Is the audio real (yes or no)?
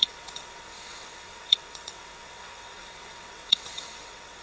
no